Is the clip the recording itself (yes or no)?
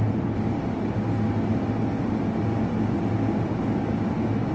yes